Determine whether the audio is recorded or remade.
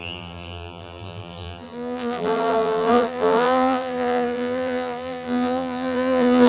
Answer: remade